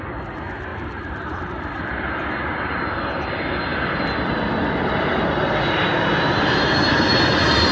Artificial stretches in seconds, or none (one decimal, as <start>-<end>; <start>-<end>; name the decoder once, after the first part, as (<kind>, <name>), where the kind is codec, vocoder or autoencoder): 0.7-1.5 (vocoder, BigVGAN v2)